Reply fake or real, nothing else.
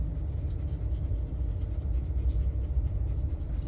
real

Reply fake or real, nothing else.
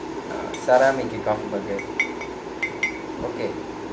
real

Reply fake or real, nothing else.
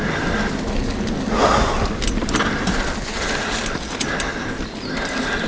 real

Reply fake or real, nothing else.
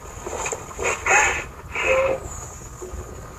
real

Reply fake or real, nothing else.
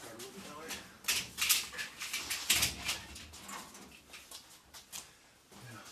real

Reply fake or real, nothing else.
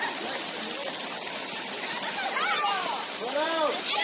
fake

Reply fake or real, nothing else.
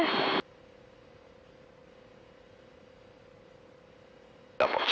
real